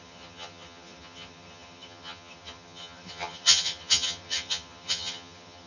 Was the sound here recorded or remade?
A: remade